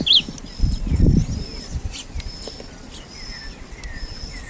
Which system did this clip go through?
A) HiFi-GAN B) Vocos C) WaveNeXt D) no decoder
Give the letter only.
D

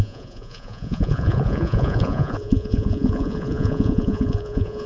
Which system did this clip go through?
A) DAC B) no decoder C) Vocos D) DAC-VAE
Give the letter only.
C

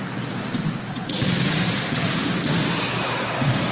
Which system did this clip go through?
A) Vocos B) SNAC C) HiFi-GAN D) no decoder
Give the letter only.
D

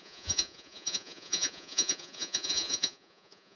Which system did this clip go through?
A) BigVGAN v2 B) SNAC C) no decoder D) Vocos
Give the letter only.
D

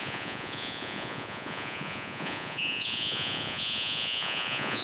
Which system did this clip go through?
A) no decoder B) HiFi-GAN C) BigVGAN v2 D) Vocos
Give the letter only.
D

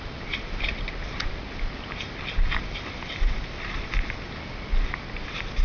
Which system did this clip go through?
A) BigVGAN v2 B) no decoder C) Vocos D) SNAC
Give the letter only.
B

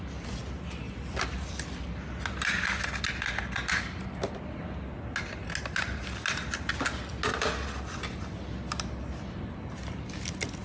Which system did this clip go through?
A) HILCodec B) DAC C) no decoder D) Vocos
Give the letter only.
C